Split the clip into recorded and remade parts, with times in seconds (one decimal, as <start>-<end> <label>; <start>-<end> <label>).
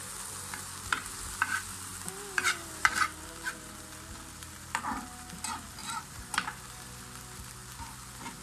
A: 0.0-1.9 recorded; 1.9-4.9 remade; 4.9-5.8 recorded; 5.8-6.9 remade; 6.9-8.4 recorded